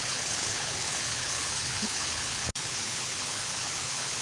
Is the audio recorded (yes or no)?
no